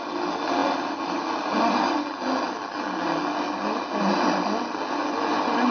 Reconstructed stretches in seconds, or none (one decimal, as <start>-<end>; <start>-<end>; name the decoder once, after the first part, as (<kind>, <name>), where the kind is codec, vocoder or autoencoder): none